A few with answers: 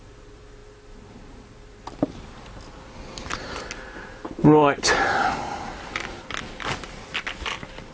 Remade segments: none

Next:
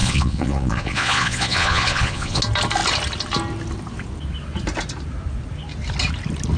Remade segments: 0.0-2.4 (vocoder, Vocos)

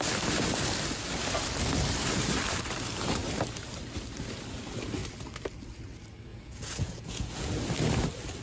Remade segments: 6.3-7.5 (vocoder, Vocos)

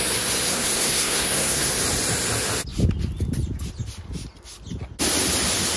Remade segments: 0.5-1.7 (codec, SNAC)

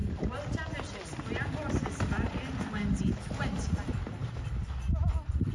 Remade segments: none

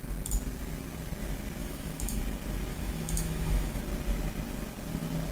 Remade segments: 1.6-2.2 (autoencoder, DAC-VAE); 2.7-3.8

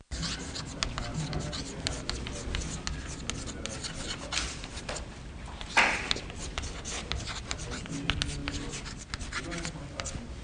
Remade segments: none

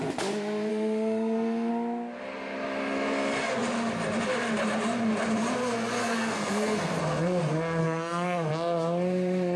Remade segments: 0.7-1.7 (codec, SNAC); 6.0-7.0; 7.8-8.5